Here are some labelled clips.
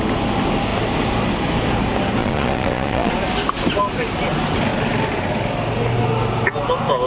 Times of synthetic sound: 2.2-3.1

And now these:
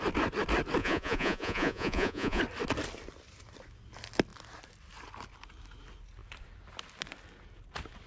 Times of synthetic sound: 0.8-2.4

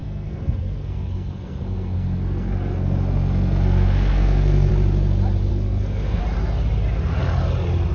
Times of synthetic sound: 0.0-4.7; 5.5-6.2

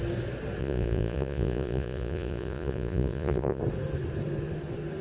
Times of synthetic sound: 0.6-3.6

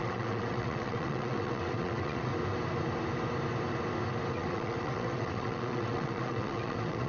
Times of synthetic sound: 0.0-2.3; 4.3-7.1

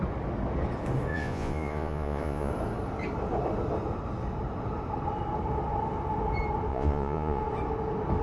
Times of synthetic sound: 1.1-2.5; 6.7-7.4

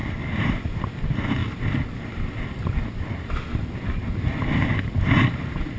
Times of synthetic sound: none